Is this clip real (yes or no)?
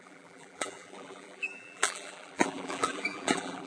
no